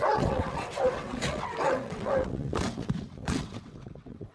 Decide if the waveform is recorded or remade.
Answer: remade